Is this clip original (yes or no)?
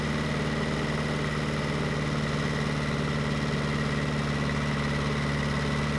yes